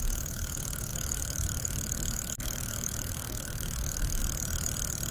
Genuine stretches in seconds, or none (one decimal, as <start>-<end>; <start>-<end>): 4.2-5.1

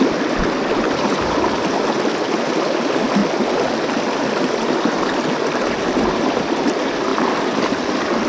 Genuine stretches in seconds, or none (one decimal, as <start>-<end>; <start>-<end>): 0.0-8.3

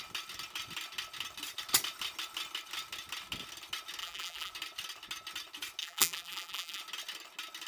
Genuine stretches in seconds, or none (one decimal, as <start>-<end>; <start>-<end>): 0.0-4.0; 4.5-5.8; 6.8-7.7

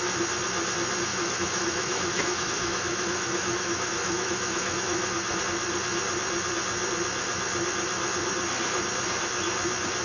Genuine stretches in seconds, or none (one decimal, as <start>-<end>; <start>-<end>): 0.0-1.1; 5.4-10.0

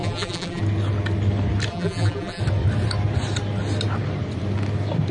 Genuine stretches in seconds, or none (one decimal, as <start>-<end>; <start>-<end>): 0.6-1.7; 2.4-5.1